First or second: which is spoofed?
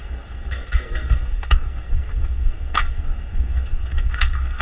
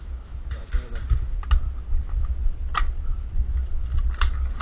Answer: first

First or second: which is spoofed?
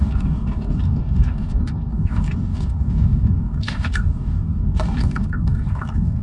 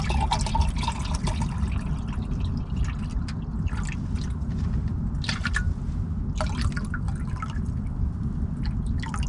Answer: first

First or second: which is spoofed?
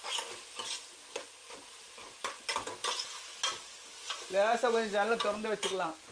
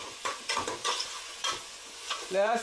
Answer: second